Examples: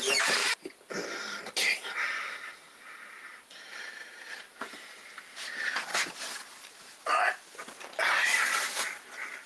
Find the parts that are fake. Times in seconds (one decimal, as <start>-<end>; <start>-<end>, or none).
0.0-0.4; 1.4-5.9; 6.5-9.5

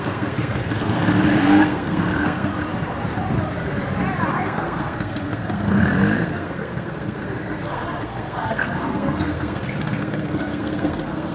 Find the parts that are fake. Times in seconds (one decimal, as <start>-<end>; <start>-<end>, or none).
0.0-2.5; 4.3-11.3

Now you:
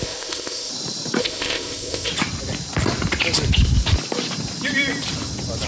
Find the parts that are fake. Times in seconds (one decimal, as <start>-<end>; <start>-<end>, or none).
0.0-0.7; 1.2-2.1